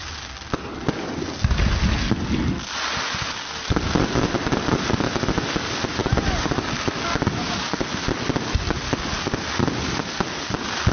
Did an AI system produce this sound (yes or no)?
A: no